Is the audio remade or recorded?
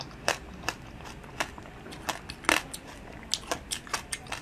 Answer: recorded